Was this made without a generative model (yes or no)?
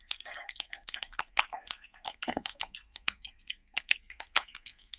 no